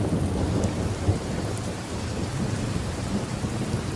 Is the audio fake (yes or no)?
yes